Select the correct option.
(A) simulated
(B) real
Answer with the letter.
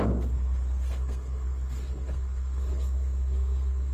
A